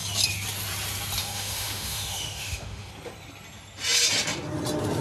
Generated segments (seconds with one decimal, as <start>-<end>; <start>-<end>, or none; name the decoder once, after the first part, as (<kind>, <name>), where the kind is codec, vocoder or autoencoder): 1.2-2.9 (autoencoder, DAC-VAE)